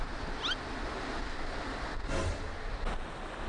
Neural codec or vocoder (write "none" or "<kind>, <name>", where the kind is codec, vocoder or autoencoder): none